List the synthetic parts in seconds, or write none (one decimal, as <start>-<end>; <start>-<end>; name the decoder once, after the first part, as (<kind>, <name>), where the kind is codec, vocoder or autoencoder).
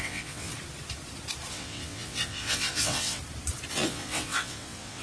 0.0-0.5 (vocoder, WaveNeXt); 1.5-3.2; 3.7-5.0